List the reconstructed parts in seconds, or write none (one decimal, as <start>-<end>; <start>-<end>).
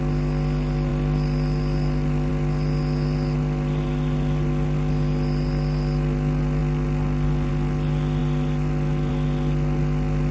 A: none